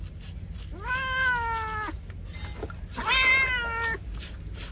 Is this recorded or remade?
recorded